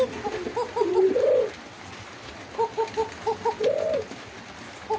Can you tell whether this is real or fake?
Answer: real